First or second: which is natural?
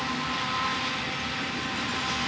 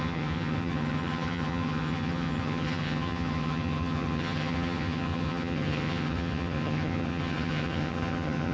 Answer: first